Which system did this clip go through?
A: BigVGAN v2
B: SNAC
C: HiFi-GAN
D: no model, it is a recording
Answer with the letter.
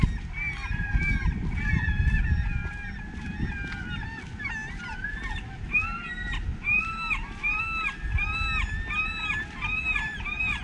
D